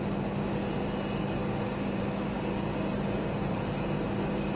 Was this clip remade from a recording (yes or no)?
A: no